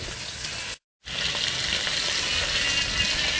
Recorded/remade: recorded